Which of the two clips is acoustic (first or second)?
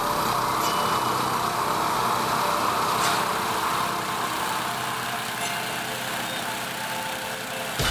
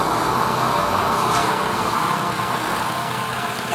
first